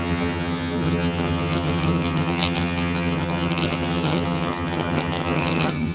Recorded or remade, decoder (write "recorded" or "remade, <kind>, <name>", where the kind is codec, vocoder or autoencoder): remade, vocoder, HiFi-GAN